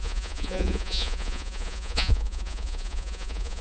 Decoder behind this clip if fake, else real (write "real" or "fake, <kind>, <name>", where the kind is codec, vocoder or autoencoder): fake, vocoder, Vocos